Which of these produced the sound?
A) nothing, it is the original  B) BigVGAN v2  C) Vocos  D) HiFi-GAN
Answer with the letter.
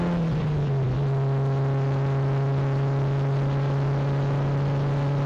A